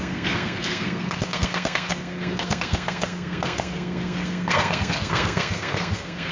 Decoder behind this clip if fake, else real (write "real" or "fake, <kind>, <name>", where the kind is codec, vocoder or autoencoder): fake, codec, SNAC